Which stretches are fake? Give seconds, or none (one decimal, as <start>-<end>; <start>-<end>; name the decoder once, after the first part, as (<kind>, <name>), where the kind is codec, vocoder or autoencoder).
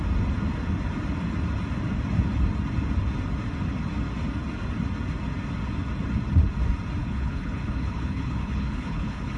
7.0-9.4 (codec, HILCodec)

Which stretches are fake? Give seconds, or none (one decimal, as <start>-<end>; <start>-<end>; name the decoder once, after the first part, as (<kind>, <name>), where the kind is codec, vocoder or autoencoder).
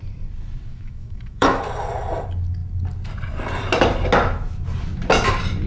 0.7-1.6 (autoencoder, DAC-VAE)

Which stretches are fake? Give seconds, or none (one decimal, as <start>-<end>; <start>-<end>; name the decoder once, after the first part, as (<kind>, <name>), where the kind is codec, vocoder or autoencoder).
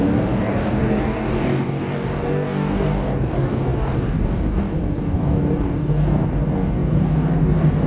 0.0-7.9 (codec, DAC)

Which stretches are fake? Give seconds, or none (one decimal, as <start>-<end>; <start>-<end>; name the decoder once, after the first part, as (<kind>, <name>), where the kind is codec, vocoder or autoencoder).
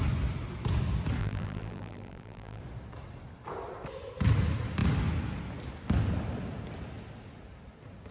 1.2-2.6 (vocoder, BigVGAN v2)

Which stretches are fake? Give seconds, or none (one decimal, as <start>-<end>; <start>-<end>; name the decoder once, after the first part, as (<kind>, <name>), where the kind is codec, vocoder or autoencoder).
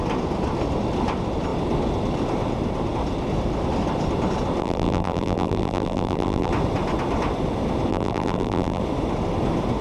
4.6-6.5 (vocoder, BigVGAN v2); 7.9-8.8